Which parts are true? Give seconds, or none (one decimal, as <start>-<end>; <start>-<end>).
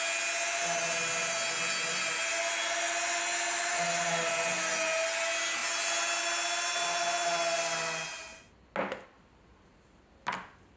0.0-10.8